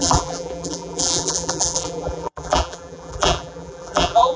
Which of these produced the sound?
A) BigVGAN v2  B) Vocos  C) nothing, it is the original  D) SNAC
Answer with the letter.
A